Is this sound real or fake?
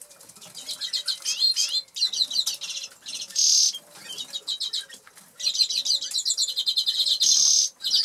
real